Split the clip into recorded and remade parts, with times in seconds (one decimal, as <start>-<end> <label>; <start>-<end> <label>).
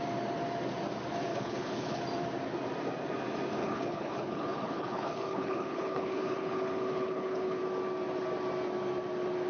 0.0-1.3 recorded; 1.3-2.0 remade; 2.0-3.6 recorded; 3.6-7.6 remade; 7.6-9.5 recorded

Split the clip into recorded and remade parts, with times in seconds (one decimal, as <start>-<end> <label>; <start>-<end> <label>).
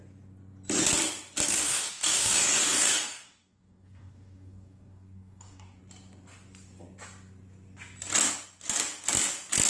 0.0-1.6 recorded; 1.6-5.8 remade; 5.8-9.7 recorded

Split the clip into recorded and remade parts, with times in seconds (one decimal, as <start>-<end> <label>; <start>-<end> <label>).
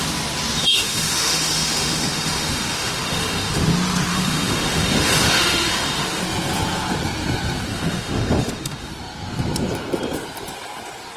0.0-0.7 recorded; 0.7-3.6 remade; 3.6-4.1 recorded; 4.1-6.2 remade; 6.2-7.7 recorded; 7.7-8.9 remade; 8.9-11.2 recorded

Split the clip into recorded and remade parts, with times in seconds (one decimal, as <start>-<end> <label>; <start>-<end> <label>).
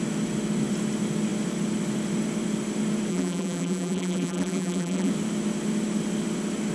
0.0-3.1 recorded; 3.1-5.1 remade; 5.1-6.7 recorded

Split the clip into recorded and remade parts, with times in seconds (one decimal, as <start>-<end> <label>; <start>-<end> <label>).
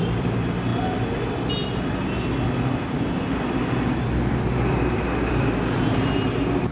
0.0-0.7 remade; 0.7-1.5 recorded; 1.5-6.7 remade